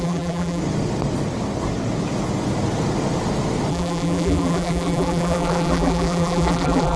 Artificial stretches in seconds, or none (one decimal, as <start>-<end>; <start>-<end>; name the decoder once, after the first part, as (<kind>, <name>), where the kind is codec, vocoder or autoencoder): 0.0-0.6 (vocoder, BigVGAN v2); 3.7-7.0